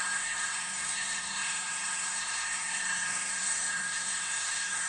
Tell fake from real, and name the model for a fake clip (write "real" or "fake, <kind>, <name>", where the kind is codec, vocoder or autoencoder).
fake, codec, SNAC